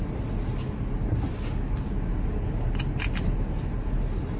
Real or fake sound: real